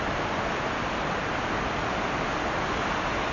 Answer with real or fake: real